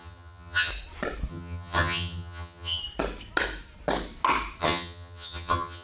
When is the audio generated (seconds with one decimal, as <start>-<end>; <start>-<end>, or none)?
0.0-0.7; 1.3-2.8; 4.6-5.8